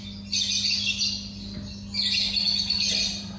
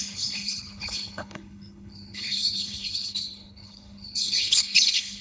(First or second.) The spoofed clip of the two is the second